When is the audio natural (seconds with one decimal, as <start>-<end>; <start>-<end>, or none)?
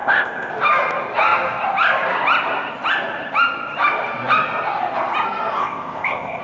0.5-5.6